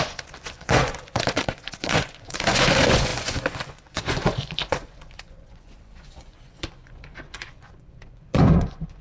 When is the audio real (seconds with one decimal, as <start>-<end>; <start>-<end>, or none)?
none